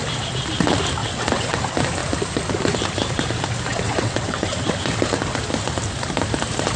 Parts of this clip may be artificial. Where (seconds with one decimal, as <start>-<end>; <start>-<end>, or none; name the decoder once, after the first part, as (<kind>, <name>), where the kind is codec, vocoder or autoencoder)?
1.0-1.6 (vocoder, WaveNeXt); 3.7-4.7